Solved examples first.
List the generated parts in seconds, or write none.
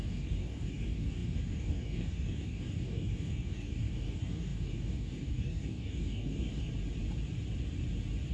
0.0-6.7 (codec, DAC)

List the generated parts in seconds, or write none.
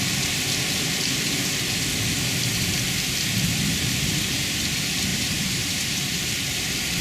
5.1-6.2 (vocoder, BigVGAN v2)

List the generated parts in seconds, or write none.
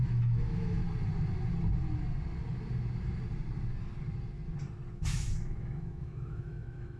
0.0-0.8 (autoencoder, DAC-VAE); 4.9-7.0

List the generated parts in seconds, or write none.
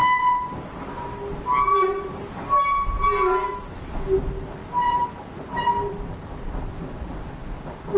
none